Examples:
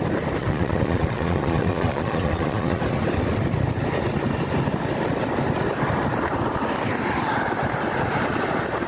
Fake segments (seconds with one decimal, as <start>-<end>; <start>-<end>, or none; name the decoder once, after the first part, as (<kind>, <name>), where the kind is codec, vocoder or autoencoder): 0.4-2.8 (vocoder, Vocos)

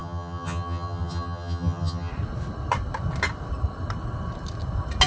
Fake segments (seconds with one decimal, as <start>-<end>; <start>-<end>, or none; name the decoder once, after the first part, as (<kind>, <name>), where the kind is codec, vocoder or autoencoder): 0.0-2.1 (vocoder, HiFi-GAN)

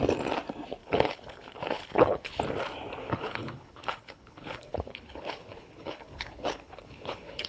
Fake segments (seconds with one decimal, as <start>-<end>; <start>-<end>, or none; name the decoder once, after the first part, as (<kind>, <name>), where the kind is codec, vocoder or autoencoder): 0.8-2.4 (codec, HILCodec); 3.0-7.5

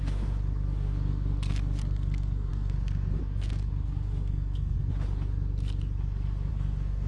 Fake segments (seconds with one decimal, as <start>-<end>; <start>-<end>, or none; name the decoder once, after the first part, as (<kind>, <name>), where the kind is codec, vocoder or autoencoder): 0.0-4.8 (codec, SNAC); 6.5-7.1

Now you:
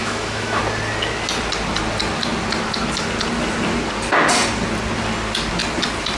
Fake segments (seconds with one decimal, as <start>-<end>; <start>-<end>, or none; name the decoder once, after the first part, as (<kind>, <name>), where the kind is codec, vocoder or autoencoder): 0.0-0.6 (autoencoder, DAC-VAE)

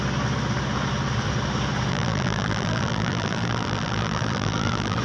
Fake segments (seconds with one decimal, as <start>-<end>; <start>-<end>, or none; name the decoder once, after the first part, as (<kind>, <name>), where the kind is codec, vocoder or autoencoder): 1.9-5.0 (vocoder, BigVGAN v2)